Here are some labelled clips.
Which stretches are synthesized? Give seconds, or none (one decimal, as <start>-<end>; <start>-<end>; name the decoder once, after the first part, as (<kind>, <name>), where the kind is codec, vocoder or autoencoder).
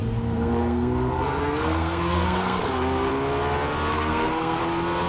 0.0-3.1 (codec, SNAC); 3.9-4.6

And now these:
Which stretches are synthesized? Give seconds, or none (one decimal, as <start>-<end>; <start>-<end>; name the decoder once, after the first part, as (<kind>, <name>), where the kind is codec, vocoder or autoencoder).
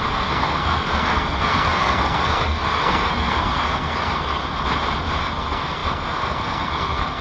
0.0-4.4 (codec, SNAC); 5.2-7.2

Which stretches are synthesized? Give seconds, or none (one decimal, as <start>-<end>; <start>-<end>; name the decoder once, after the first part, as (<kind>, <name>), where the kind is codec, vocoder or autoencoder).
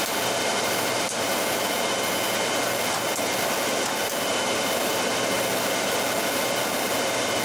0.5-1.3 (vocoder, BigVGAN v2)